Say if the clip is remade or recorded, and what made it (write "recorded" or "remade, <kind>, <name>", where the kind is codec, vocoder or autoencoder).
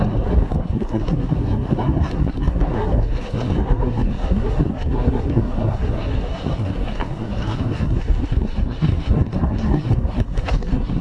remade, codec, SNAC